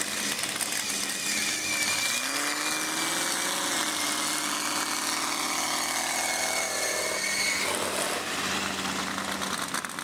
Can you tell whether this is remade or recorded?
recorded